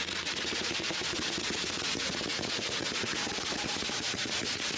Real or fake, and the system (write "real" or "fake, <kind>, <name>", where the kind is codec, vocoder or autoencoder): fake, vocoder, Vocos